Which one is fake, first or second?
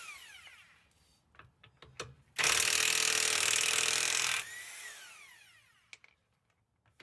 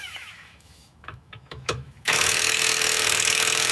second